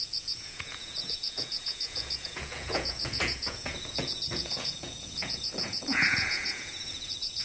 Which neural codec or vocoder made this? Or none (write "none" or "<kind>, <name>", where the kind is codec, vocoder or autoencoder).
vocoder, Vocos